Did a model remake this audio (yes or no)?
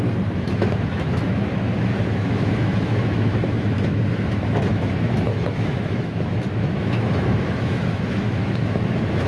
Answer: yes